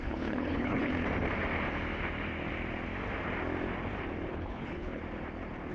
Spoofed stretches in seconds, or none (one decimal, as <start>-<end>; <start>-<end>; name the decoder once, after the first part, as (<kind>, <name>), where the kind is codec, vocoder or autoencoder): 0.0-0.9 (codec, HILCodec); 4.3-5.0